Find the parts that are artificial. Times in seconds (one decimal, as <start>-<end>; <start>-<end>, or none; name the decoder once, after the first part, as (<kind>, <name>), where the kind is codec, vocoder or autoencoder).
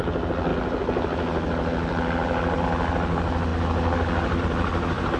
none